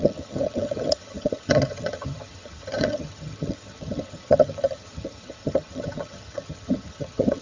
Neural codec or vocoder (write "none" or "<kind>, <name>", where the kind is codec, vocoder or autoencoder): vocoder, HiFi-GAN